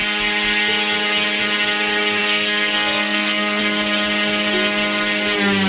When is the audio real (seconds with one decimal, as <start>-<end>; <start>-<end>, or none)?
0.0-2.2; 3.6-5.7